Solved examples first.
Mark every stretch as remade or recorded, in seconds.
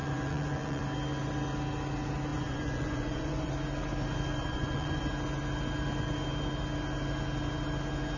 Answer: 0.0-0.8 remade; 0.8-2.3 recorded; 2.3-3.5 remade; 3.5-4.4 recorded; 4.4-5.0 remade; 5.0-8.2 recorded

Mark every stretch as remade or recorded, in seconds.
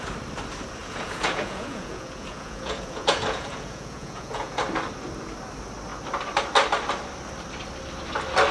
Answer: 0.0-0.8 recorded; 0.8-4.6 remade; 4.6-8.5 recorded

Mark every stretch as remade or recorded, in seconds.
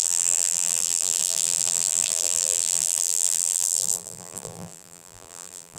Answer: 0.0-5.8 remade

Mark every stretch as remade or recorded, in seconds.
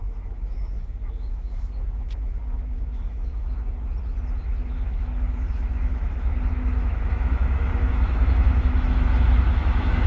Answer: 0.0-3.3 remade; 3.3-4.4 recorded; 4.4-10.1 remade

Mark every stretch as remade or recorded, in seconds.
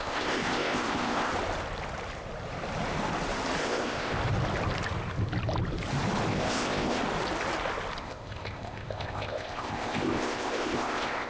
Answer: 0.0-1.3 remade; 1.3-3.6 recorded; 3.6-4.2 remade; 4.2-6.3 recorded; 6.3-7.0 remade; 7.0-8.0 recorded; 8.0-11.3 remade